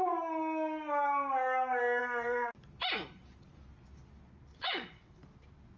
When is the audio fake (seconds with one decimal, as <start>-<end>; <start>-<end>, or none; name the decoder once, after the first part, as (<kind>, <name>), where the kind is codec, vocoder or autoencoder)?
2.0-2.5 (vocoder, WaveNeXt); 4.5-5.2

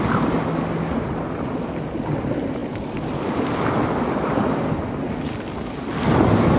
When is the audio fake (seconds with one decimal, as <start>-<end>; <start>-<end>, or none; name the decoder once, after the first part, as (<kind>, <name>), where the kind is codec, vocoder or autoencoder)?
none

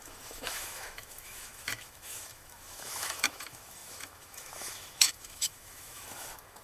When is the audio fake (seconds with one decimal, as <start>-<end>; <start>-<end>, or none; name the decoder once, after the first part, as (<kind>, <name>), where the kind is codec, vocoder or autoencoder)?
0.0-6.6 (autoencoder, DAC-VAE)

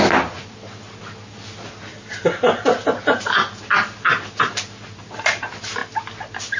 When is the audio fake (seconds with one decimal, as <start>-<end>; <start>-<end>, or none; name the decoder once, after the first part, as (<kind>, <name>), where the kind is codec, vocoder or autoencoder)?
none

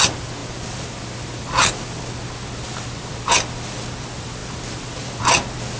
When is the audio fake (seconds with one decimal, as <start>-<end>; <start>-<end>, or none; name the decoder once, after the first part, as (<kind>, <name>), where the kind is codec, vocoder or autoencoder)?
none

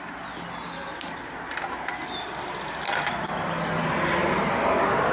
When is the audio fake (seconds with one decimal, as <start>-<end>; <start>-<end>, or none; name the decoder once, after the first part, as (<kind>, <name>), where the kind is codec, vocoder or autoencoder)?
none

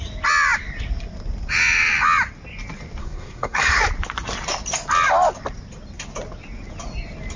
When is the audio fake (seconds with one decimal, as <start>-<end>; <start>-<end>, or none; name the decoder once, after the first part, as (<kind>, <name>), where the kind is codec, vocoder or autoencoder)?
3.0-3.8 (codec, SNAC)